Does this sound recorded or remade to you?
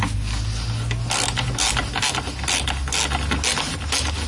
recorded